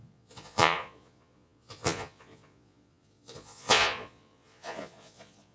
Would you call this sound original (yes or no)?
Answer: no